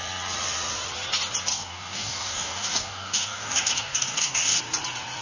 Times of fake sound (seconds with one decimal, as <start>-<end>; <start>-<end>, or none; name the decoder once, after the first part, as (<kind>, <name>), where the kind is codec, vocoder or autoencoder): 1.5-4.6 (codec, DAC)